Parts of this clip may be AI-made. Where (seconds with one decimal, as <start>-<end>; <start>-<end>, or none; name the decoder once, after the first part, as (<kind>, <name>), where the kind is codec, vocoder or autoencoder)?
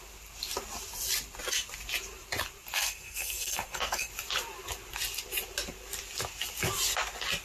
2.8-4.1 (codec, SNAC)